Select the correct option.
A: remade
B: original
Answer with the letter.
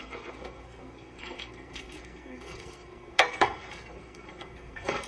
A